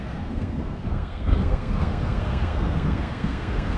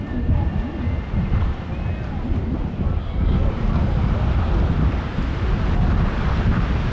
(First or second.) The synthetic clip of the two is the first